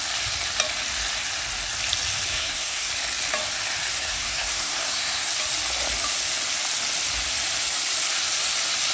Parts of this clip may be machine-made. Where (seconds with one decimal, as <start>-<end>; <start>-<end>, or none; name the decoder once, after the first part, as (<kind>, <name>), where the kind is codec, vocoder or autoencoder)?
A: 2.3-2.9 (codec, SNAC); 3.9-5.3

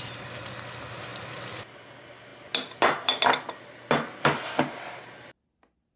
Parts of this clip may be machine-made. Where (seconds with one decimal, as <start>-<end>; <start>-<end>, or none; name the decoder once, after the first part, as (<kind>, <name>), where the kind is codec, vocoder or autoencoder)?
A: none

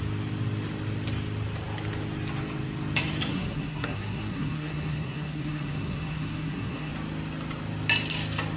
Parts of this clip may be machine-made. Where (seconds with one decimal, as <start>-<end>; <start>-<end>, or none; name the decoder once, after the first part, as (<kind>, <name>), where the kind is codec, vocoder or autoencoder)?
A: 3.3-6.9 (codec, SNAC)

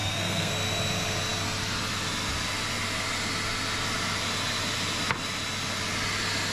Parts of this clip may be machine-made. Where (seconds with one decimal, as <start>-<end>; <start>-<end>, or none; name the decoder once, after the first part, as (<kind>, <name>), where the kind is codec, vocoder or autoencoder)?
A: 0.0-0.5 (codec, SNAC)

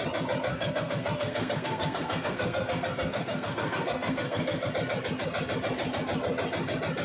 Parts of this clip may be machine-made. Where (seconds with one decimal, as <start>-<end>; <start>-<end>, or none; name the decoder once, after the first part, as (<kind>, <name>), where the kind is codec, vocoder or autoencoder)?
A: 0.5-4.7 (codec, SNAC)

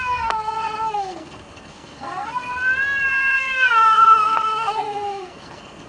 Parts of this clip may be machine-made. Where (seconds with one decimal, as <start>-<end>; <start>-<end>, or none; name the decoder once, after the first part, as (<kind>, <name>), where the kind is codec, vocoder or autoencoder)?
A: 0.0-2.5 (codec, SNAC); 3.1-5.9

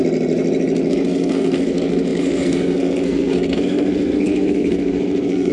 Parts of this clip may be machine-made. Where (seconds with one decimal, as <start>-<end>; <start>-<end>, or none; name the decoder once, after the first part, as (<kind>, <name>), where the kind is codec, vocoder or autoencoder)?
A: 0.9-5.5 (codec, SNAC)